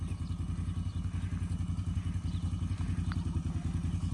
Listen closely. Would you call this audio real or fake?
real